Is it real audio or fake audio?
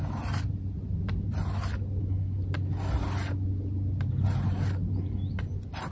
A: real